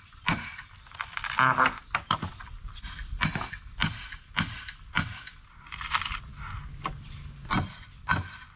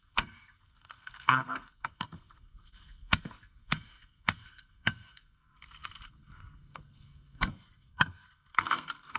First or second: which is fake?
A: second